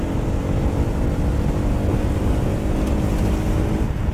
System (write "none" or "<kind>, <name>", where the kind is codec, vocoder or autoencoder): none